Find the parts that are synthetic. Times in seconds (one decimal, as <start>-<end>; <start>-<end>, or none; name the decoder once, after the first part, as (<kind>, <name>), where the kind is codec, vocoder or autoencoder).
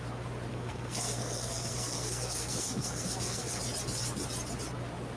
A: 0.5-3.6 (codec, SNAC)